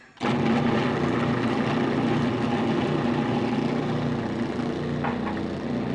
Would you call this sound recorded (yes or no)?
yes